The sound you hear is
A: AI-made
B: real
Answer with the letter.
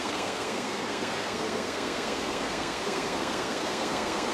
A